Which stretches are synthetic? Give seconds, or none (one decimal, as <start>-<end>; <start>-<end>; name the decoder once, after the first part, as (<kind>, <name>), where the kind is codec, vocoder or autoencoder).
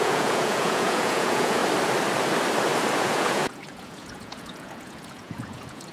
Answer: 0.0-1.6 (vocoder, Vocos); 3.0-5.9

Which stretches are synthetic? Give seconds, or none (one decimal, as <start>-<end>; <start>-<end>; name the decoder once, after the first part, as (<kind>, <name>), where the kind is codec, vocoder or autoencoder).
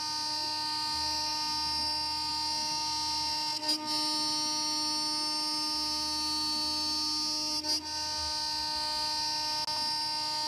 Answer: none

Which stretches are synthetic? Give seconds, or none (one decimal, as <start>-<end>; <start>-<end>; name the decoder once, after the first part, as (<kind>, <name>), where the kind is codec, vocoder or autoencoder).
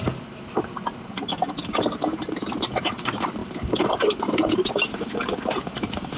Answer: 0.0-1.4 (vocoder, BigVGAN v2); 2.7-3.4; 4.0-6.2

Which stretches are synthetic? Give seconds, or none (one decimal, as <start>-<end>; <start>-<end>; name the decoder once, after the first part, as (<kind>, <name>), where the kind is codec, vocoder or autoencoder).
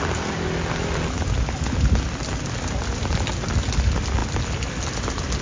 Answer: none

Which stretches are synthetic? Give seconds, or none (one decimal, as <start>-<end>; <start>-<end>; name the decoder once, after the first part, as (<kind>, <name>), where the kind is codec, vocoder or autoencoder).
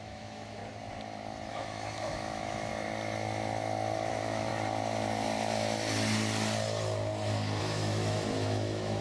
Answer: 0.0-0.6 (autoencoder, DAC-VAE); 1.5-2.7; 4.1-4.5; 7.6-9.0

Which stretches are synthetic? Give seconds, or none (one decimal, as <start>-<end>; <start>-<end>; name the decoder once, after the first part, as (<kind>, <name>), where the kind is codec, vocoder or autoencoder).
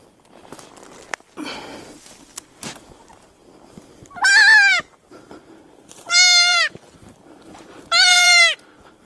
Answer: 6.5-8.4 (vocoder, BigVGAN v2)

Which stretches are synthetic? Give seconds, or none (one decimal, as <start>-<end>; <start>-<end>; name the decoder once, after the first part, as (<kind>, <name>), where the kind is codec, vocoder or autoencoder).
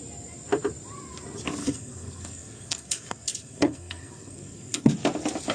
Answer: 1.6-4.9 (codec, SNAC)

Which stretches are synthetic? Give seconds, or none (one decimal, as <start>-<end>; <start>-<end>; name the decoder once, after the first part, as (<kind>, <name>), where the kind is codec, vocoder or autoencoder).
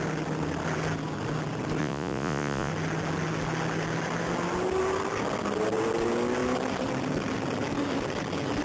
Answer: 1.8-2.7 (vocoder, Vocos)